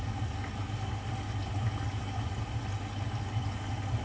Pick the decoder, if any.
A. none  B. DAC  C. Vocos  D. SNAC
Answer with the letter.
A